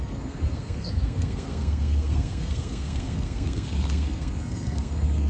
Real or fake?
fake